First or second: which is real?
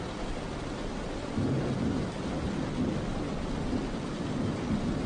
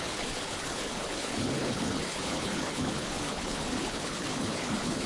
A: first